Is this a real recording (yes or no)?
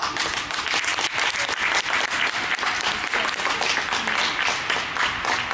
yes